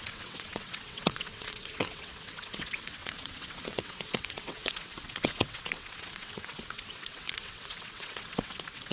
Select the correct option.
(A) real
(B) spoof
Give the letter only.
B